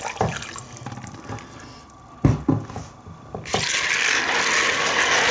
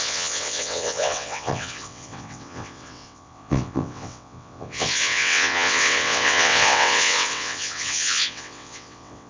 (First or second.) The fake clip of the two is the second